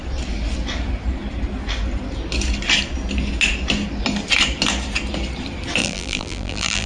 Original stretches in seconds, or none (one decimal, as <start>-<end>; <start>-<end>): 0.0-5.8